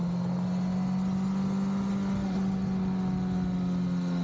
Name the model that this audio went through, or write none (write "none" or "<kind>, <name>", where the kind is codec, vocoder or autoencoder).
none